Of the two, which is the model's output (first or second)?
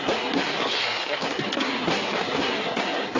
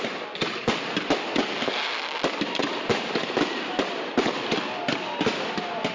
first